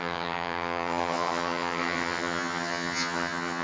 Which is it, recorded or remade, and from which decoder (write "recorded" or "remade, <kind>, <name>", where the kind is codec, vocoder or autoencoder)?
remade, vocoder, HiFi-GAN